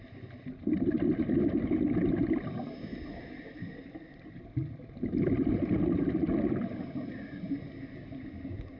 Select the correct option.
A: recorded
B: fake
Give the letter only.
A